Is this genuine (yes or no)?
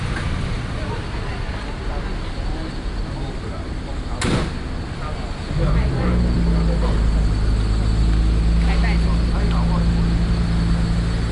yes